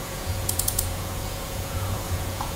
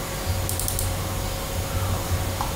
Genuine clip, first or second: second